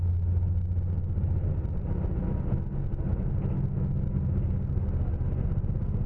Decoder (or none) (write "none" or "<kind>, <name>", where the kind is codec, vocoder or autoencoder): none